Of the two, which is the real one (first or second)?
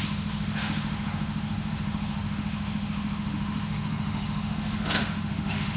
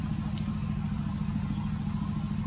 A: second